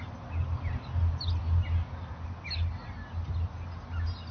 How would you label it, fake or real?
real